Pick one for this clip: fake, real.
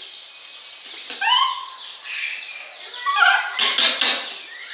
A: real